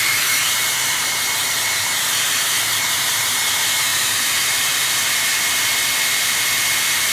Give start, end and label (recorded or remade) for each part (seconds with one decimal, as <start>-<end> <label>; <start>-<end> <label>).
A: 0.0-7.1 remade